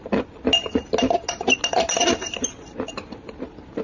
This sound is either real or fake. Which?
real